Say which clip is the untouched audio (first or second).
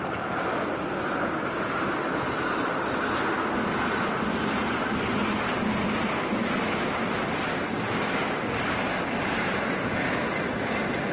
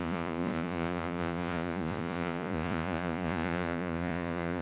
first